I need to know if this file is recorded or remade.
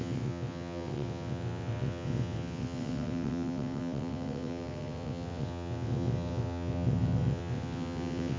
remade